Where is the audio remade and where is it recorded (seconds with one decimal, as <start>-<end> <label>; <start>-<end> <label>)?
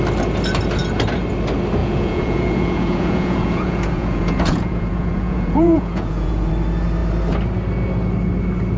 0.0-1.8 recorded; 1.8-6.5 remade; 6.5-8.8 recorded